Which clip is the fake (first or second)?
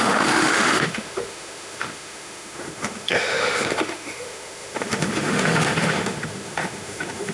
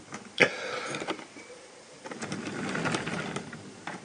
first